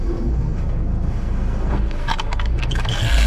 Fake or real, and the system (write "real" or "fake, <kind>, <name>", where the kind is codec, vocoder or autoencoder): fake, codec, SNAC